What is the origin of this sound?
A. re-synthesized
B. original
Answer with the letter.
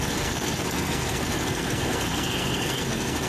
A